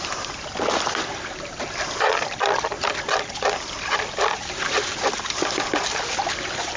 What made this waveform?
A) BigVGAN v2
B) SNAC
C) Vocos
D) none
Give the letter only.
D